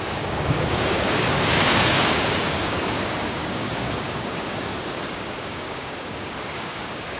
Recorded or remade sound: remade